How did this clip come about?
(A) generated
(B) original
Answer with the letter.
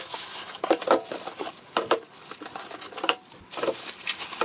B